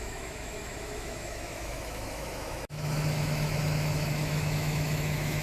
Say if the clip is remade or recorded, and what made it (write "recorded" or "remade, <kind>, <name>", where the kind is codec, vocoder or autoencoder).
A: remade, autoencoder, DAC-VAE